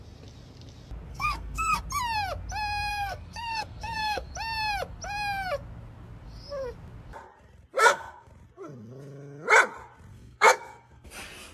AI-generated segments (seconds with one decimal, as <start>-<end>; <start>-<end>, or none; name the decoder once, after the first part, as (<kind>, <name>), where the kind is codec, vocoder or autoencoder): 1.1-1.8 (codec, SNAC); 2.9-4.3; 7.8-8.3; 10.1-11.1